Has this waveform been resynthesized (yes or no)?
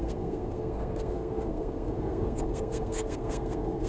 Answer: yes